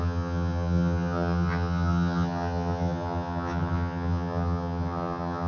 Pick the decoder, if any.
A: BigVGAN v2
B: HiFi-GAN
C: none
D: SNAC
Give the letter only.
B